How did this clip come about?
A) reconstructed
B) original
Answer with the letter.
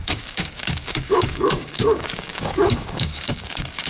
A